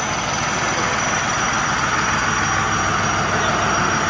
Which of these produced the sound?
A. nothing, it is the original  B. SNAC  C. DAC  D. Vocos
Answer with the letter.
A